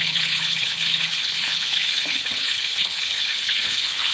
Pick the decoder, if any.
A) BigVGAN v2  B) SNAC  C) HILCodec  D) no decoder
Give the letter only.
C